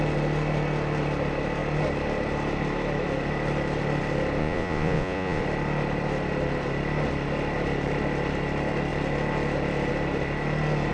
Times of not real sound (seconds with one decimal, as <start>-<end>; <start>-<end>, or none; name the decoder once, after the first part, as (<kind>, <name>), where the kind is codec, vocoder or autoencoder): 4.4-5.4 (vocoder, Vocos)